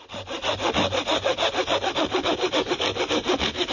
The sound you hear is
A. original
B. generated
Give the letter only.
A